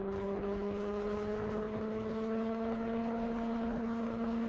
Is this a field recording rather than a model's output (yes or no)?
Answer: no